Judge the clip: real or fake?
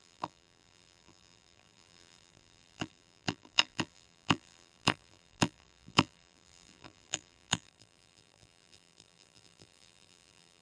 fake